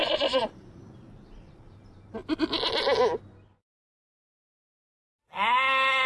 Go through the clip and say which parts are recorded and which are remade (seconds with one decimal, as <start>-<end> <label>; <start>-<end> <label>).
0.0-2.2 remade; 2.2-6.1 recorded